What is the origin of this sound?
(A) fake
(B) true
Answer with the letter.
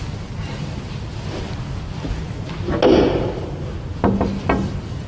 B